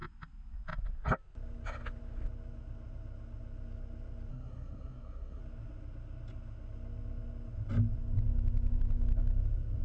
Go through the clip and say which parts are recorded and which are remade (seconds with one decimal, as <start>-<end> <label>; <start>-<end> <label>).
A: 0.0-4.3 recorded; 4.3-5.4 remade; 5.4-9.8 recorded